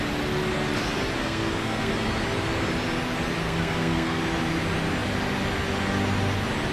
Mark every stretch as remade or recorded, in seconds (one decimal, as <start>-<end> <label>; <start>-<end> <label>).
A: 0.0-1.2 recorded; 1.2-1.9 remade; 1.9-3.4 recorded; 3.4-4.2 remade; 4.2-6.7 recorded